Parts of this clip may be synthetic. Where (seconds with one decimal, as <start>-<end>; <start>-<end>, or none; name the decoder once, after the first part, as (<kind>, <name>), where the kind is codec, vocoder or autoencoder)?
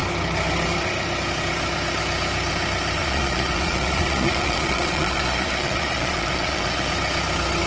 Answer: 3.0-6.9 (vocoder, Vocos)